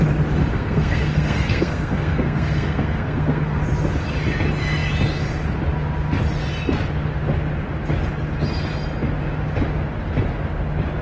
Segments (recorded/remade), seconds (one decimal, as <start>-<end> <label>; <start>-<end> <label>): 0.0-0.5 recorded; 0.5-3.6 remade; 3.6-11.0 recorded